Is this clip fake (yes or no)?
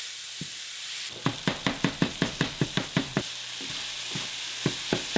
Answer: no